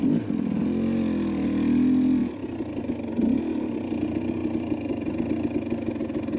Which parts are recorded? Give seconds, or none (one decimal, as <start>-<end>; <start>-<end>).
0.0-6.4